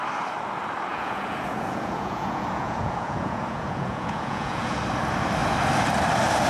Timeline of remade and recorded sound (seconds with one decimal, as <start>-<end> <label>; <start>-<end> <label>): 0.0-0.9 recorded; 0.9-4.8 remade; 4.8-6.5 recorded